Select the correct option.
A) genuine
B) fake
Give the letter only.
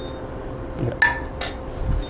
A